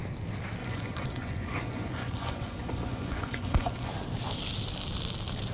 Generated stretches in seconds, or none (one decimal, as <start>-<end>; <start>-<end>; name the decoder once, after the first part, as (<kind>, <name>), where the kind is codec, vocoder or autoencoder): 0.6-3.9 (vocoder, Vocos)